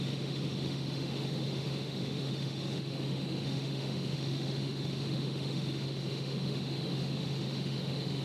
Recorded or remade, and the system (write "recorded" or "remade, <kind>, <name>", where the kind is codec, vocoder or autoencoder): remade, autoencoder, DAC-VAE